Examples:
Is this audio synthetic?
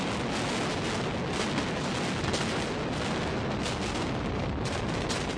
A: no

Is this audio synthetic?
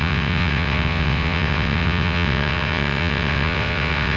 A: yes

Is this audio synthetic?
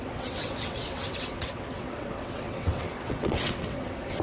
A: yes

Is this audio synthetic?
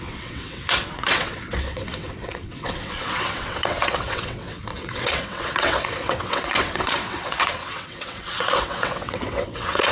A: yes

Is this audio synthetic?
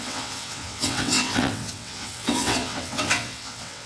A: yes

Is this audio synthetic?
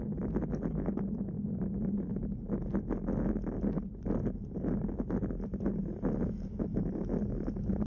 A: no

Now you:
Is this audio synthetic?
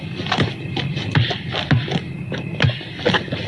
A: no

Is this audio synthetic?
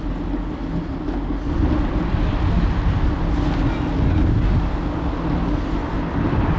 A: no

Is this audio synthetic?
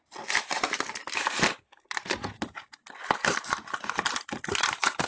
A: no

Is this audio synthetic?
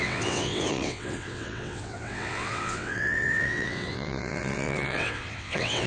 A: yes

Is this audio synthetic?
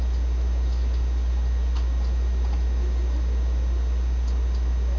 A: no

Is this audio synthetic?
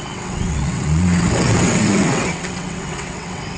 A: yes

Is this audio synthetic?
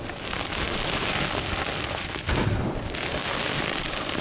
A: no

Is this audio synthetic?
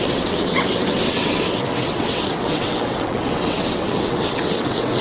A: yes